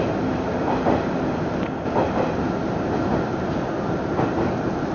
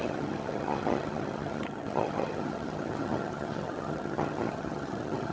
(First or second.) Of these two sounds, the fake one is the second